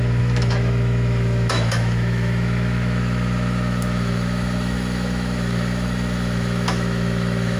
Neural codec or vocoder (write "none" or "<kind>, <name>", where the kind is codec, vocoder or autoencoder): autoencoder, DAC-VAE